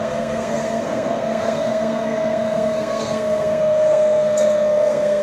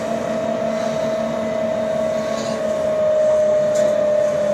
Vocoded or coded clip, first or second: first